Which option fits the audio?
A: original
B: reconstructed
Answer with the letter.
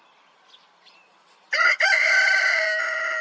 A